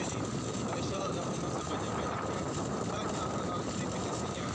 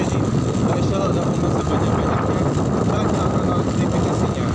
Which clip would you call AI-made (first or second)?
first